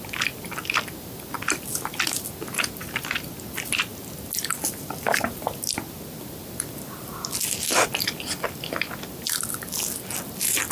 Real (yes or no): yes